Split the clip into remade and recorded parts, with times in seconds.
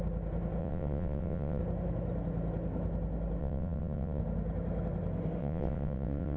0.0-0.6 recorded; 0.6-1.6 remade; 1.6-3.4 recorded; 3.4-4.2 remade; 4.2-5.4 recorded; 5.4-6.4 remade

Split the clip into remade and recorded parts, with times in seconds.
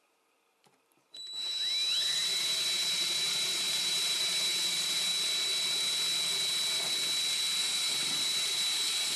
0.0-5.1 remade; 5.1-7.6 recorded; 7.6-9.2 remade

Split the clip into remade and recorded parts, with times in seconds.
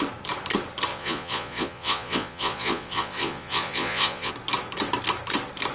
0.0-0.9 recorded; 0.9-4.3 remade; 4.3-5.7 recorded